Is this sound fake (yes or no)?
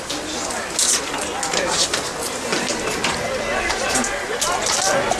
no